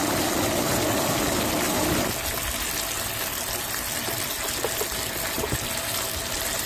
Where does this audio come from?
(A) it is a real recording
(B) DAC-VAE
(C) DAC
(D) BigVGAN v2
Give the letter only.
A